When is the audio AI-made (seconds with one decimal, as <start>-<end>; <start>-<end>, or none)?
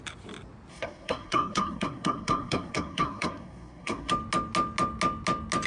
0.7-4.1